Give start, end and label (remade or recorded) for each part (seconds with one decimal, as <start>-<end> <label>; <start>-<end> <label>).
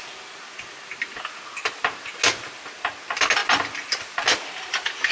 0.0-5.1 recorded